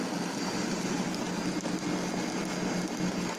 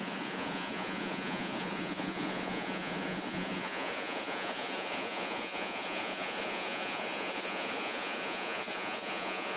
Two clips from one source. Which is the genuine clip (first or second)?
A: first